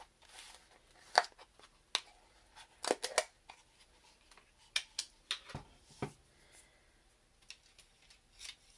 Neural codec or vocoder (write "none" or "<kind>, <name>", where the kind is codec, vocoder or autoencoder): none